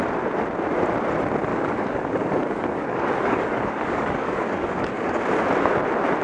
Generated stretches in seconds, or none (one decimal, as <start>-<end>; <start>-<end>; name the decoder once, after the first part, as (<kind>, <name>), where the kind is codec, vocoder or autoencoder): 1.5-5.2 (codec, DAC)